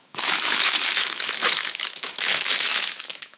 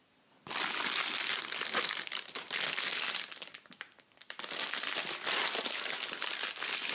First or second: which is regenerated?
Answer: first